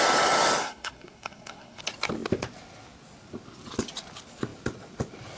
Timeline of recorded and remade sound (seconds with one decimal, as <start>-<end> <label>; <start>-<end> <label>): 0.0-0.6 recorded; 0.6-1.8 remade; 1.8-5.4 recorded